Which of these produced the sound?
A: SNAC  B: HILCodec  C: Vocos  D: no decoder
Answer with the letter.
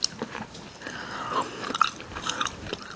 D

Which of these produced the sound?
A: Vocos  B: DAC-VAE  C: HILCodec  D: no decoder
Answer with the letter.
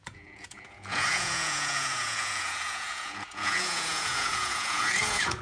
A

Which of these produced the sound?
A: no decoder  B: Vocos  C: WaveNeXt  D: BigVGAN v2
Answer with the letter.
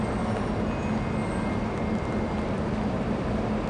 A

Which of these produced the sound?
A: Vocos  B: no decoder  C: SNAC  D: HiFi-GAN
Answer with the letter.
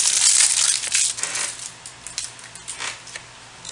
B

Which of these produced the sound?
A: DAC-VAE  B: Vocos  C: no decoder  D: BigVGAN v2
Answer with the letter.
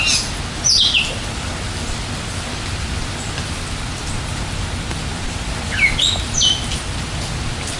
C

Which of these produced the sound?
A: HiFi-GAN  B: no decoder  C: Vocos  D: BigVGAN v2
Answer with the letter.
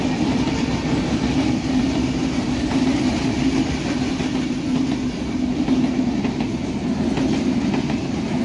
B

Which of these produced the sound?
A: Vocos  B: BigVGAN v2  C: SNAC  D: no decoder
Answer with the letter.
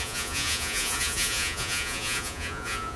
A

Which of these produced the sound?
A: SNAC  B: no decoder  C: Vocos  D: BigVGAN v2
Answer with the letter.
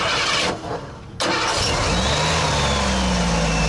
B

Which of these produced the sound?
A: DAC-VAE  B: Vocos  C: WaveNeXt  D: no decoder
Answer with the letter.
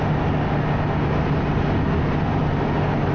D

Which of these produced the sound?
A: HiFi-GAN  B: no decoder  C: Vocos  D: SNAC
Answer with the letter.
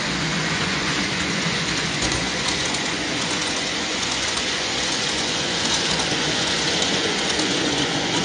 C